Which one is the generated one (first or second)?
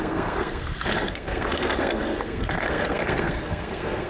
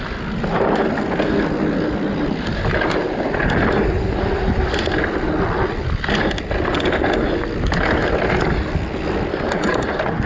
first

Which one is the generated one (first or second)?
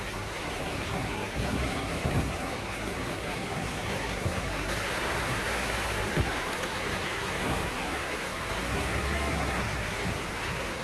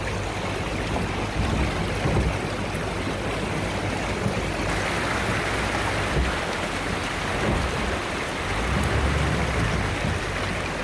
first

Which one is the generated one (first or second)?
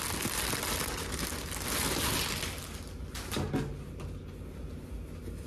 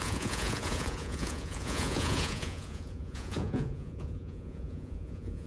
second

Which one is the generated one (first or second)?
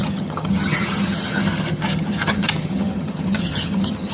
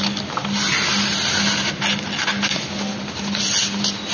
first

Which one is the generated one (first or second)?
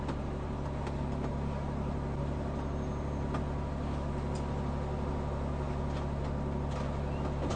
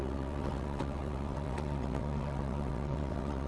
second